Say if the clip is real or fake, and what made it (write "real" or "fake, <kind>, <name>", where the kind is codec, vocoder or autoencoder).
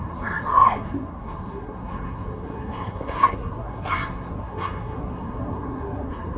fake, codec, SNAC